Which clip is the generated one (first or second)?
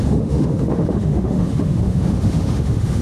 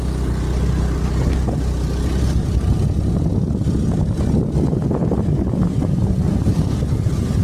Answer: first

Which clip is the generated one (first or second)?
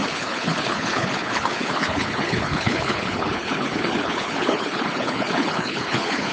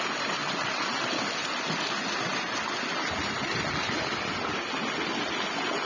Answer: first